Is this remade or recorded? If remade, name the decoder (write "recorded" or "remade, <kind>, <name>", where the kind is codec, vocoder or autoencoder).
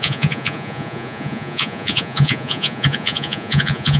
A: remade, vocoder, Vocos